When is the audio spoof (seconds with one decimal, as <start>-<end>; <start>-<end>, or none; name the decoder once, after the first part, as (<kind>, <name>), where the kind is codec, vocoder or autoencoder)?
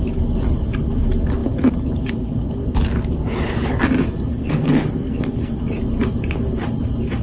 4.3-5.6 (codec, SNAC)